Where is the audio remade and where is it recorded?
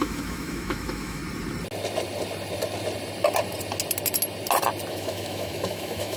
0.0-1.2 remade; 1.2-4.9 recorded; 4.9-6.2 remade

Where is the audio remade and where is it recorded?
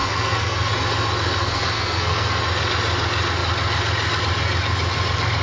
0.0-0.7 remade; 0.7-1.4 recorded; 1.4-2.4 remade; 2.4-5.4 recorded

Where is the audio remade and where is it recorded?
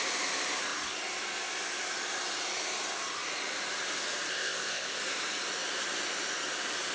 0.0-4.3 recorded; 4.3-5.0 remade; 5.0-6.9 recorded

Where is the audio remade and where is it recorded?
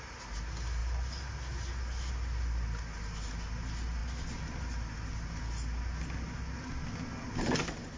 0.0-8.0 recorded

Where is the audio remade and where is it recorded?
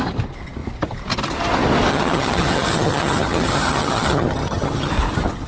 0.0-1.9 recorded; 1.9-4.9 remade; 4.9-5.5 recorded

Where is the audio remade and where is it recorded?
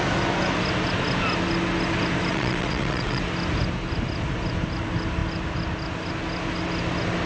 0.0-2.3 recorded; 2.3-3.2 remade; 3.2-7.3 recorded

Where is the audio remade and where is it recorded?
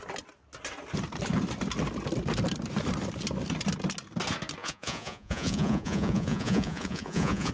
0.0-4.6 recorded; 4.6-7.5 remade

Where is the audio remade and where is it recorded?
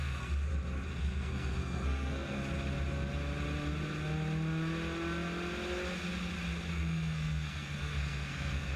0.0-0.5 remade; 0.5-1.0 recorded; 1.0-2.4 remade; 2.4-6.7 recorded; 6.7-8.8 remade